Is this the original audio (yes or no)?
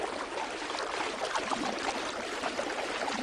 yes